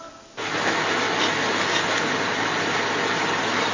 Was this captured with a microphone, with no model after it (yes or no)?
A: yes